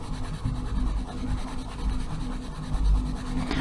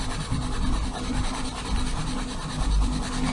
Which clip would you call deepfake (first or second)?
second